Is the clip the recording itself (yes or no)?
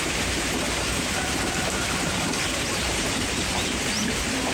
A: no